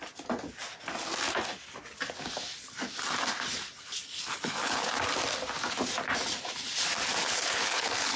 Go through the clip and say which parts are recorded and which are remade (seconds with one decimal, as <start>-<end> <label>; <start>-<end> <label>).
0.0-4.0 recorded; 4.0-4.9 remade; 4.9-7.2 recorded; 7.2-8.2 remade